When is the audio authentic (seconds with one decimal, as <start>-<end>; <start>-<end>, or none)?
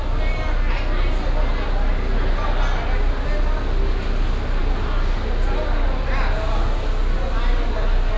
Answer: 0.0-8.2